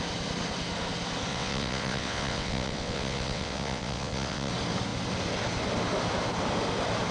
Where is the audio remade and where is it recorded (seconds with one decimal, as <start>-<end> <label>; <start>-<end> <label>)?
0.0-1.3 recorded; 1.3-4.5 remade; 4.5-7.1 recorded